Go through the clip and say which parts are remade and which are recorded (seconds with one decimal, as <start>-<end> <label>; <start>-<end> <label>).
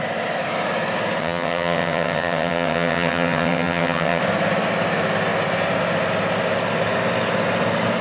0.0-1.2 recorded; 1.2-4.2 remade; 4.2-8.0 recorded